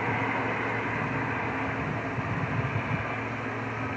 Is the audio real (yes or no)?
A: yes